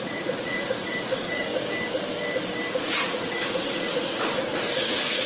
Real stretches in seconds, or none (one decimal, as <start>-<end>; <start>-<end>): 1.5-2.7